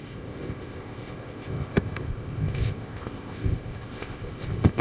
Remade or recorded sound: remade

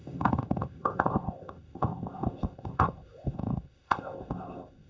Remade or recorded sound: remade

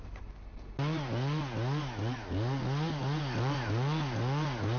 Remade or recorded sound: recorded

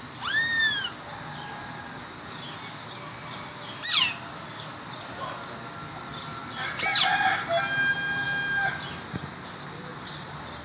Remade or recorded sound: recorded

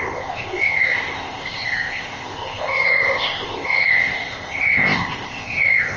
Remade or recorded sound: remade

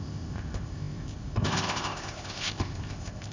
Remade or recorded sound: remade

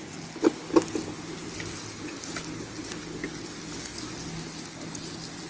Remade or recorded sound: recorded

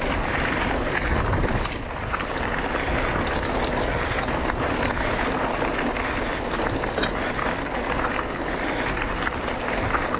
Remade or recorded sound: recorded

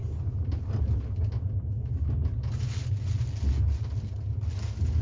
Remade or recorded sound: recorded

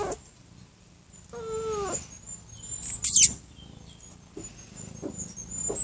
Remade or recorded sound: recorded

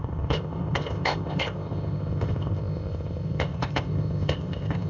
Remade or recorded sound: remade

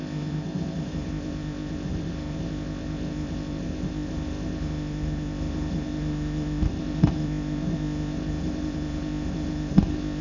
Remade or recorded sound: remade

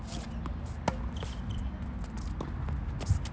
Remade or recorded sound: recorded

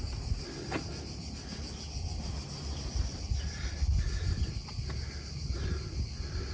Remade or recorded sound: recorded